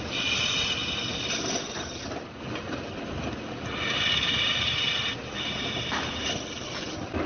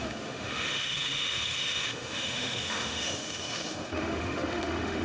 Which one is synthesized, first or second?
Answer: second